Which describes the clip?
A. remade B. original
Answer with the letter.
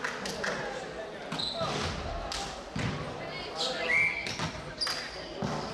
B